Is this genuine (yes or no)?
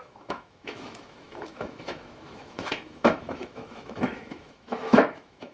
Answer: no